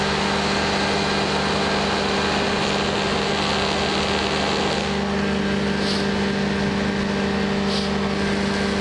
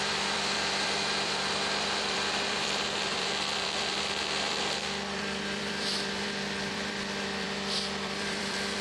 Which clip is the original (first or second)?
first